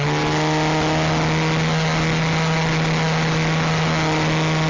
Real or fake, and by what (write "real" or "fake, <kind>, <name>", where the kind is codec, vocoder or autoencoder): real